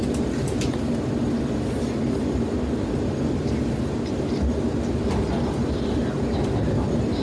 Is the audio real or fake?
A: real